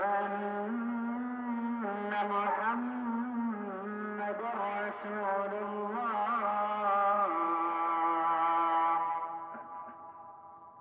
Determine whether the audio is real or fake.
real